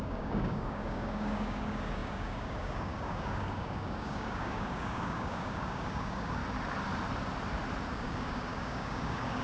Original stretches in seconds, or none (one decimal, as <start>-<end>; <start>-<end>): 6.4-7.9